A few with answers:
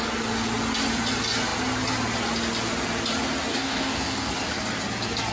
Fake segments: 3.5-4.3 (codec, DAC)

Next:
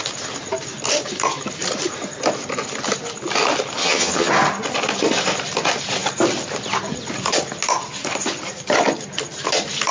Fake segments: 3.8-4.3 (vocoder, HiFi-GAN)

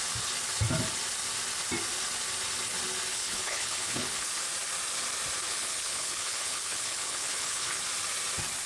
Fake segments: 3.1-4.3 (codec, HILCodec); 5.5-7.8